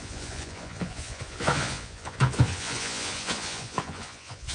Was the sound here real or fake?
fake